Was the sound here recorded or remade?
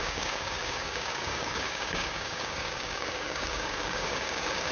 remade